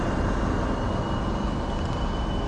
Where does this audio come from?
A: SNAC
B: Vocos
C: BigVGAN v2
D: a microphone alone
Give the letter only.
D